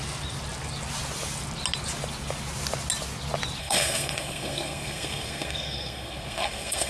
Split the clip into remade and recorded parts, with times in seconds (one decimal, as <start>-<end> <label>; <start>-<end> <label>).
0.0-3.6 recorded; 3.6-6.9 remade